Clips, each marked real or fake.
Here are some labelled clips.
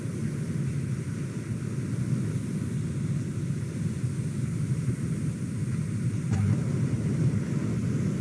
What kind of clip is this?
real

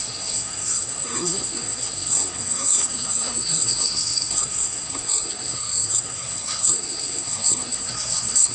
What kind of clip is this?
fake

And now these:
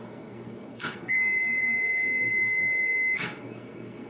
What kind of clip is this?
fake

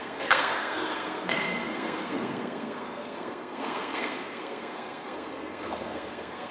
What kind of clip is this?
fake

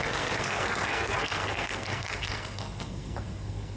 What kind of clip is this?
fake